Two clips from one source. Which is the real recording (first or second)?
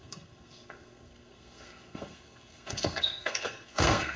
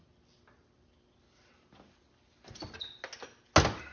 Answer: second